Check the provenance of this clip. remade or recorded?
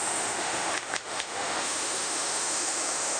remade